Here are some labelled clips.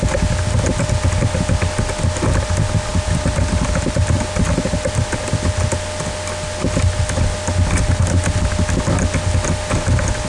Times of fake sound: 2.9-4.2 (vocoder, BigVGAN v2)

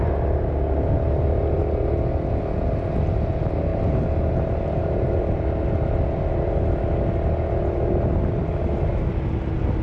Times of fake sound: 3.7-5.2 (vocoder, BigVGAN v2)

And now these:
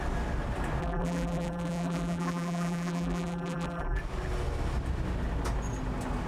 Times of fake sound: 0.8-4.0 (vocoder, BigVGAN v2)

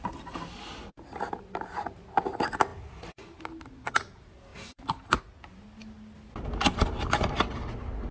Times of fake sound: 4.5-5.2 (vocoder, BigVGAN v2)